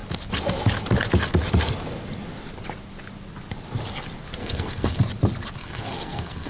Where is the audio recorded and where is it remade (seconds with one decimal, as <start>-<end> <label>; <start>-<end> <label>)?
0.0-4.4 recorded; 4.4-5.0 remade; 5.0-5.6 recorded; 5.6-6.5 remade